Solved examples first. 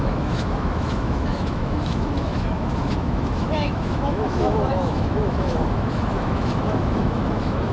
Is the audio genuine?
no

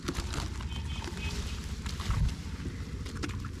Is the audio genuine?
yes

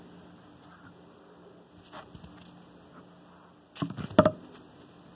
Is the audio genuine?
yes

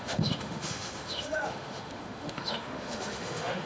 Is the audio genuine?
no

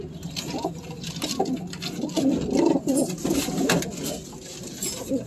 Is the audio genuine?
yes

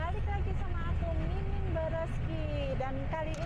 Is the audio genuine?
yes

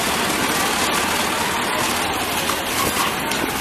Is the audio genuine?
yes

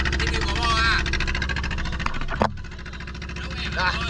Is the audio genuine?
yes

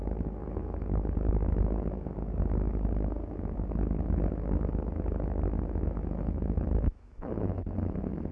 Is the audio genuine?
no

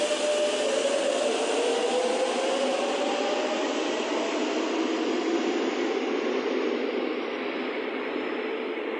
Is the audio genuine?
yes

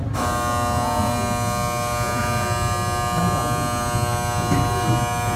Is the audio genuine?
yes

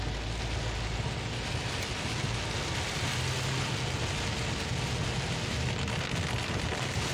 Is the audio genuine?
yes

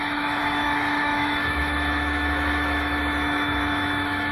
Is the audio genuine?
no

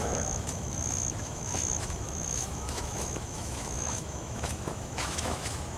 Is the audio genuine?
no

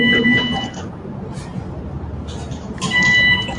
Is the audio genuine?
yes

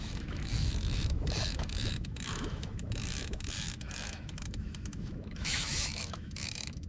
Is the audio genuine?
no